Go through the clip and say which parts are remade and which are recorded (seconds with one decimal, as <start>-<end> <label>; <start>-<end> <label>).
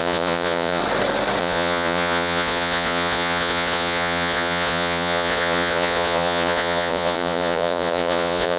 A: 0.0-0.8 remade; 0.8-1.4 recorded; 1.4-8.6 remade